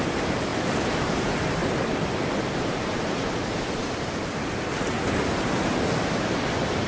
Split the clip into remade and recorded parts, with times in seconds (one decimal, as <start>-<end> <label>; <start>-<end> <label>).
0.0-6.9 recorded